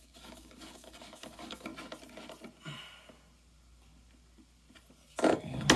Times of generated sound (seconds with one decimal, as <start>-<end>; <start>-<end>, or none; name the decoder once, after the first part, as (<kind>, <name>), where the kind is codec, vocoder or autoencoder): 0.0-1.7 (codec, DAC); 5.2-5.8